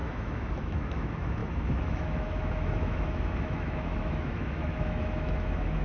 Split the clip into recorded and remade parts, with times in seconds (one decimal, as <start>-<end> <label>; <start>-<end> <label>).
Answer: 0.0-5.8 remade